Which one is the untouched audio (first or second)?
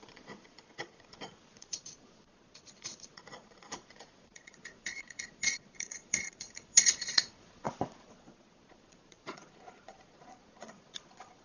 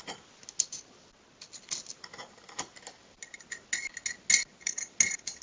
second